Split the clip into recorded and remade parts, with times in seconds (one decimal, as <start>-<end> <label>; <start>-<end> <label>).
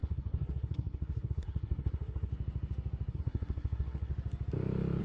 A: 0.0-2.3 remade; 2.3-3.1 recorded; 3.1-4.1 remade; 4.1-5.0 recorded